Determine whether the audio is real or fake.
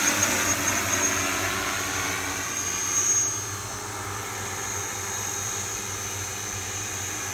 real